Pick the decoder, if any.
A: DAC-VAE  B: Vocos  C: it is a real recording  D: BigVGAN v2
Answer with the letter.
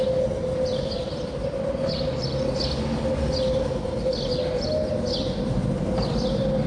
C